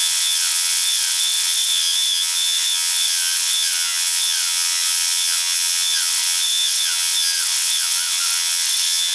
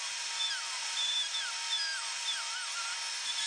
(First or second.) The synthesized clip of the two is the first